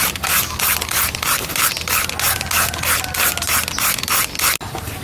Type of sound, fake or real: real